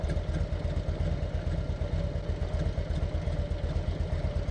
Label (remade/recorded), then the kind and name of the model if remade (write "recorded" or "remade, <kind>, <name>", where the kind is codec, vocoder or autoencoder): recorded